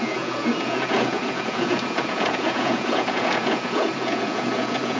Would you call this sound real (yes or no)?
no